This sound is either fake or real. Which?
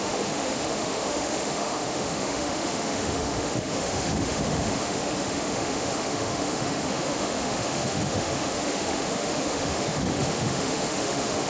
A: fake